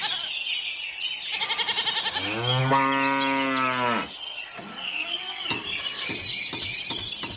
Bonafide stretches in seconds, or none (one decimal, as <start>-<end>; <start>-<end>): 0.0-4.8; 5.4-7.4